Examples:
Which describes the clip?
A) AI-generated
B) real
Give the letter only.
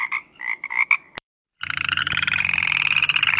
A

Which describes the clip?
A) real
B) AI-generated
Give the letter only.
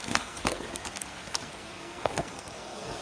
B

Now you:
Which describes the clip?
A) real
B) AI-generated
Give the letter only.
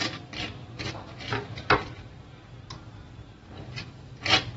A